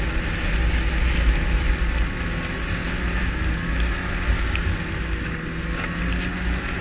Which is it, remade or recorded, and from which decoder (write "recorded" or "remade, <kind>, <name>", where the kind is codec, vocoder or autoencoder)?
recorded